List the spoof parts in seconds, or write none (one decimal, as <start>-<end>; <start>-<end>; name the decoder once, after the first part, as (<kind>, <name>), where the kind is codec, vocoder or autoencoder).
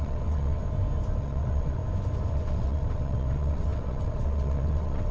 0.0-0.6 (vocoder, WaveNeXt); 1.2-1.8; 2.3-5.1